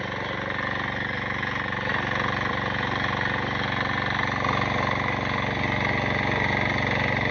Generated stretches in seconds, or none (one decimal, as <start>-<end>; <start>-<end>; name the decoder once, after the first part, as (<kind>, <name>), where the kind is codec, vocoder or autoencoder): none